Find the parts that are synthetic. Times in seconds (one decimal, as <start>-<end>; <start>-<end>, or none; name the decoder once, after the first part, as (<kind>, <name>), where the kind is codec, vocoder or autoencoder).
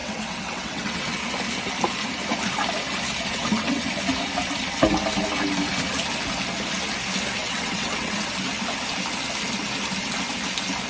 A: 0.0-1.0 (vocoder, WaveNeXt); 3.3-3.9; 7.4-8.3